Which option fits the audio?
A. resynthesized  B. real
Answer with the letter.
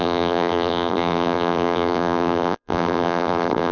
A